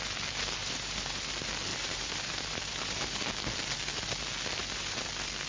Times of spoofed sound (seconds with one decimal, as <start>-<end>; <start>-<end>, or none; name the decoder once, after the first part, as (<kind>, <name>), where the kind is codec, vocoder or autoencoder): 0.6-1.2 (vocoder, BigVGAN v2); 1.7-3.2; 4.6-5.1